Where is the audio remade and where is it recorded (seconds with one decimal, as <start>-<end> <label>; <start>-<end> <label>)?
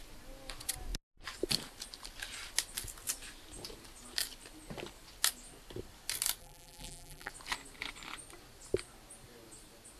0.0-6.4 recorded; 6.4-7.3 remade; 7.3-10.0 recorded